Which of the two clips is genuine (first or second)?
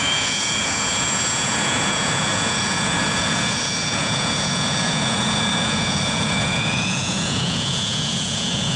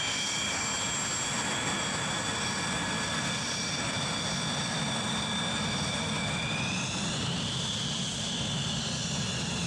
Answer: second